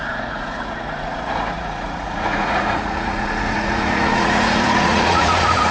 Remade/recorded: remade